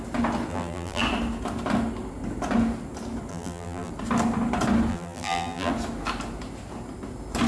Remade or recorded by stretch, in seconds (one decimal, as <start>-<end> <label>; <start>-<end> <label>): 0.0-0.5 recorded; 0.5-1.0 remade; 1.0-3.3 recorded; 3.3-3.9 remade; 3.9-4.9 recorded; 4.9-5.7 remade; 5.7-7.5 recorded